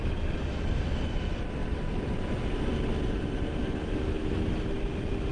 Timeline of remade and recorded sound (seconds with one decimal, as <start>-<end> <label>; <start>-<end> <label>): 0.0-3.6 recorded; 3.6-4.5 remade; 4.5-5.3 recorded